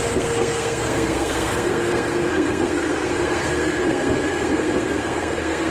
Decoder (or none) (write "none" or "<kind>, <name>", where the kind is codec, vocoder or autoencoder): codec, SNAC